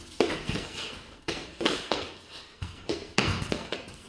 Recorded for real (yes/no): no